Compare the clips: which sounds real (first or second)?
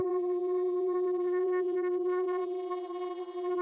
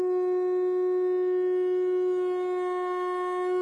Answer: second